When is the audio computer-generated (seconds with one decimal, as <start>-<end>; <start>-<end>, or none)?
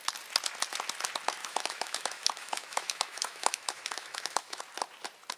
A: 1.4-4.6